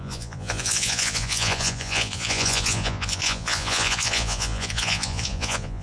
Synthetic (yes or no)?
yes